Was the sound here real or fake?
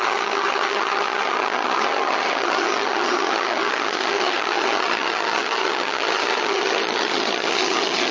fake